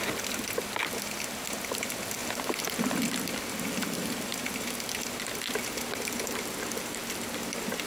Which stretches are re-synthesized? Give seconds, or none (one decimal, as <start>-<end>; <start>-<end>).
none